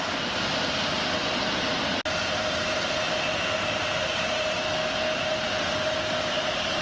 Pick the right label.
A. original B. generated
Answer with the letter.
A